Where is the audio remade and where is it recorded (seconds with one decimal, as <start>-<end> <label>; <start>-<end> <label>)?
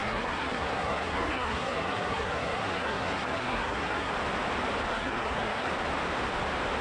0.0-4.1 remade; 4.1-4.9 recorded; 4.9-5.7 remade; 5.7-6.8 recorded